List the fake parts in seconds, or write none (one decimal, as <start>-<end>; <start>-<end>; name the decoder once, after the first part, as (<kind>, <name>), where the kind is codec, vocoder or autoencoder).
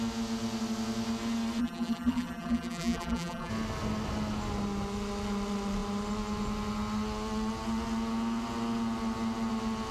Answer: 1.6-3.5 (vocoder, BigVGAN v2)